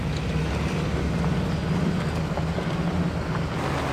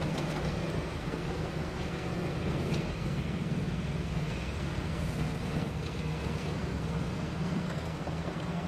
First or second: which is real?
first